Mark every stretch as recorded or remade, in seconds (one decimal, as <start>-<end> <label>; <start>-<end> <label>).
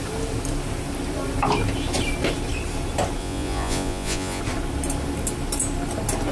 0.0-3.2 recorded; 3.2-4.4 remade; 4.4-6.3 recorded